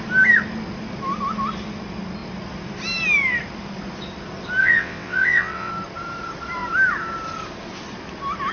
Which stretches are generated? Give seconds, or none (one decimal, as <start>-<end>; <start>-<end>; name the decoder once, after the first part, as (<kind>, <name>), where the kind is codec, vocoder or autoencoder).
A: 4.6-5.7 (vocoder, WaveNeXt)